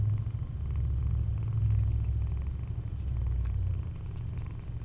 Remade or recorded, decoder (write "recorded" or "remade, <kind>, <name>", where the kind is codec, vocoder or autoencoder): recorded